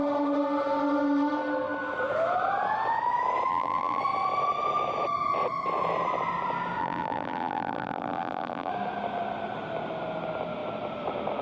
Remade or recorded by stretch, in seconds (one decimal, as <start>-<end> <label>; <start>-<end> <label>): 0.0-3.5 recorded; 3.5-4.0 remade; 4.0-6.8 recorded; 6.8-8.7 remade; 8.7-11.4 recorded